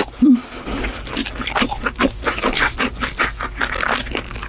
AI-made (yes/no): no